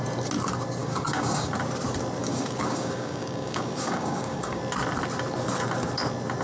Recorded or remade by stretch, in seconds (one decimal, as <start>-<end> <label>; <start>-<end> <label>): 0.0-0.8 recorded; 0.8-1.5 remade; 1.5-2.2 recorded; 2.2-4.6 remade; 4.6-6.4 recorded